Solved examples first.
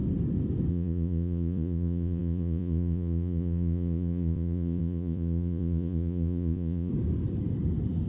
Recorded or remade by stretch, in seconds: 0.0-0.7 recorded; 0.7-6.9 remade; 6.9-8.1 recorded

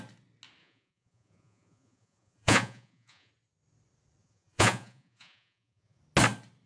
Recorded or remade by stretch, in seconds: 0.0-0.6 recorded; 0.6-3.3 remade; 3.3-4.2 recorded; 4.2-6.0 remade; 6.0-6.7 recorded